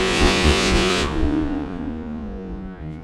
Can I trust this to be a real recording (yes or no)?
no